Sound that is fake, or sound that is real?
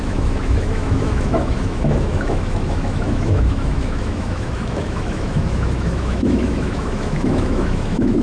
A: fake